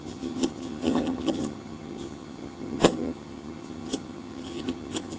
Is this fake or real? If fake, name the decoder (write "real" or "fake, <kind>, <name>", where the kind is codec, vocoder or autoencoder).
fake, vocoder, HiFi-GAN